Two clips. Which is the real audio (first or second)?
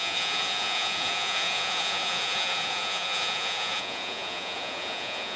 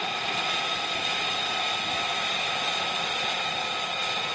second